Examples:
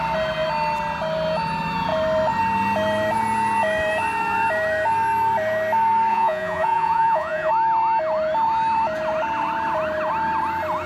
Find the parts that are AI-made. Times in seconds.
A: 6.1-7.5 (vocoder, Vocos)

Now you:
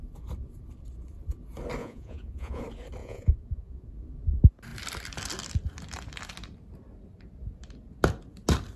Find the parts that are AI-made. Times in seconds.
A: 1.8-2.6 (vocoder, Vocos); 3.0-3.9

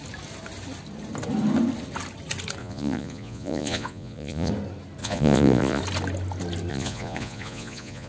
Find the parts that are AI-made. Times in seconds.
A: 2.6-4.5 (vocoder, Vocos); 5.0-5.8; 6.7-8.1